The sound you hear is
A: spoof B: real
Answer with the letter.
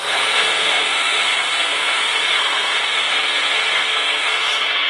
A